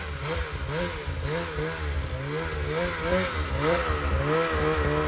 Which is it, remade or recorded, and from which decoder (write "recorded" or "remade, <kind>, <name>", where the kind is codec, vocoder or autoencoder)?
recorded